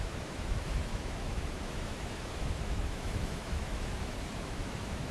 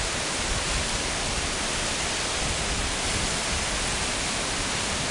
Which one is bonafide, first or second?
second